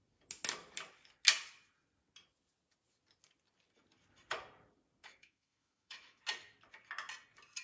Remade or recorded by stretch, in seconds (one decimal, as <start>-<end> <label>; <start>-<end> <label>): 0.0-5.0 recorded; 5.0-6.2 remade; 6.2-7.6 recorded